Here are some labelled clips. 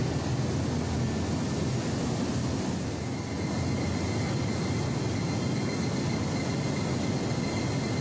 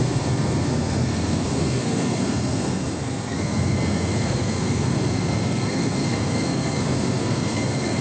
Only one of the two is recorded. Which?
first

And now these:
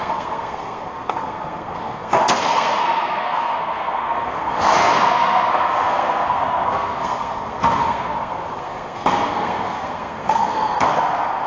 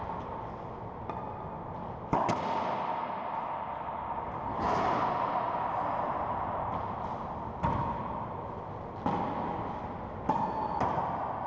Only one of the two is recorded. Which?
second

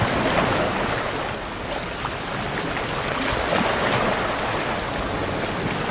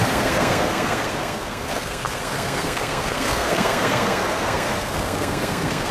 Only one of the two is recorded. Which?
first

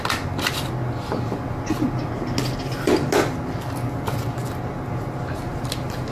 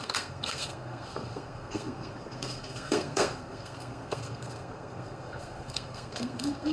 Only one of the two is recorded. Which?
first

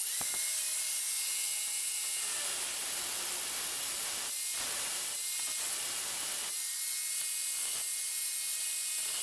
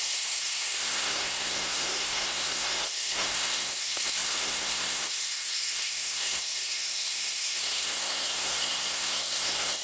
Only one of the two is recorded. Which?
first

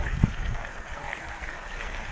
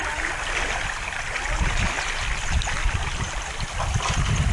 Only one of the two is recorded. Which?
second